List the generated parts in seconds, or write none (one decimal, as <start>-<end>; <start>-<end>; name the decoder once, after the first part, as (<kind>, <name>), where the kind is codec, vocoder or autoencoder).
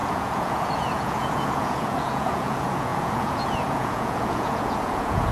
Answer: 0.0-5.3 (vocoder, Vocos)